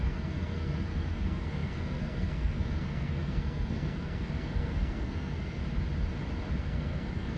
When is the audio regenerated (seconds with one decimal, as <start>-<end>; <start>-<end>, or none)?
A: 0.0-5.6; 6.6-7.4